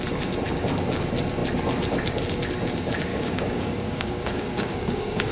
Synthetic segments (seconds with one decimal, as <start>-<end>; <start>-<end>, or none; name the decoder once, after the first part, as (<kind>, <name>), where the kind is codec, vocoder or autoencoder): 3.1-5.3 (codec, DAC)